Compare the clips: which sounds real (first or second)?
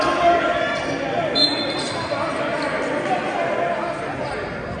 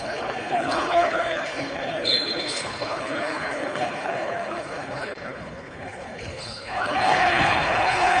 first